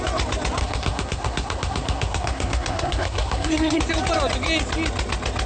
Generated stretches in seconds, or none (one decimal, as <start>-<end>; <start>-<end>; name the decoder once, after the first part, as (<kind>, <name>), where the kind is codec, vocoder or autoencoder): 0.6-3.8 (codec, SNAC)